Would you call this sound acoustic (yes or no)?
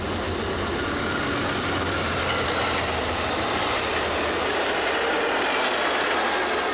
yes